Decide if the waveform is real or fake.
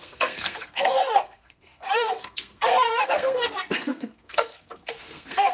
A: fake